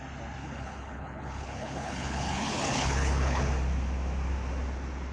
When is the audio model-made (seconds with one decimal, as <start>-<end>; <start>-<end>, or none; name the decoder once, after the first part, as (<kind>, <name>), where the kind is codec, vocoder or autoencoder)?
0.4-3.5 (codec, HILCodec)